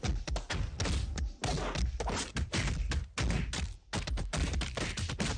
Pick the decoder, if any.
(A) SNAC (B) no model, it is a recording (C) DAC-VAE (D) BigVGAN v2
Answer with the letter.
B